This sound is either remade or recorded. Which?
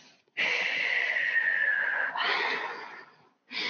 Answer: remade